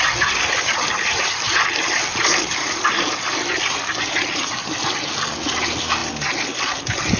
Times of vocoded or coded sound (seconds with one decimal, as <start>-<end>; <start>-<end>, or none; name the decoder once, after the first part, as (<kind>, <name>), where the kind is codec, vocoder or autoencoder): none